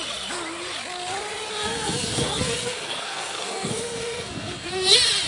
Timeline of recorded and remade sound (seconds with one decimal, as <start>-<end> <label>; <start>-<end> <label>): 0.0-1.5 recorded; 1.5-4.7 remade; 4.7-5.3 recorded